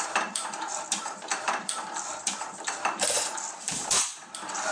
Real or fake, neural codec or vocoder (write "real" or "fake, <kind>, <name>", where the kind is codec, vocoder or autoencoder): fake, vocoder, BigVGAN v2